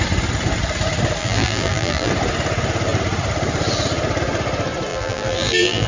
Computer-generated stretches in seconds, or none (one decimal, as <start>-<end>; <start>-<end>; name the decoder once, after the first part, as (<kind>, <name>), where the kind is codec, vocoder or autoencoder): 1.2-2.1 (vocoder, BigVGAN v2); 4.9-5.9